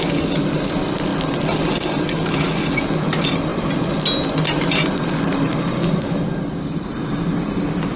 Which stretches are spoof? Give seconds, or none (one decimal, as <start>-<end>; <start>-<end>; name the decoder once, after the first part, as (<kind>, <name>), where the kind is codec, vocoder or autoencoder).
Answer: none